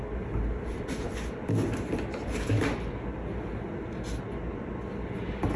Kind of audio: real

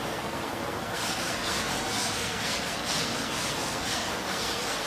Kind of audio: fake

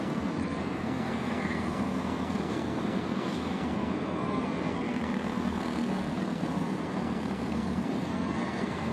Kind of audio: fake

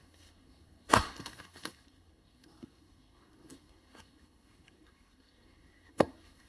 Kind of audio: fake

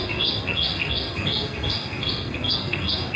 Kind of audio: fake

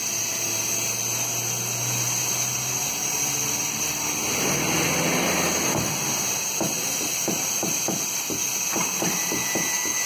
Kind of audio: real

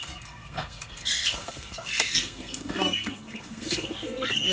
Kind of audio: fake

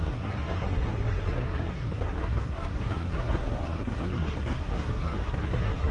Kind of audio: fake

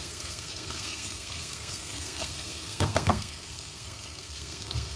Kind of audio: fake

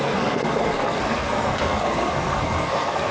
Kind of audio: fake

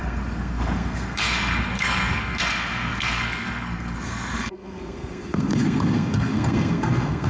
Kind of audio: fake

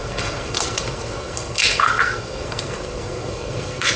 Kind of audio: fake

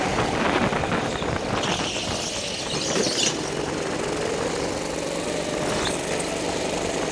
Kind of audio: real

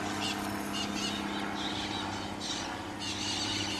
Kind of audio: real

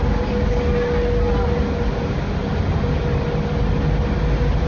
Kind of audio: real